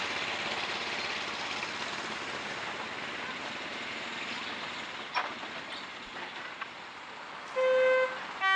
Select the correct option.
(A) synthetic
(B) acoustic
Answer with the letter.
B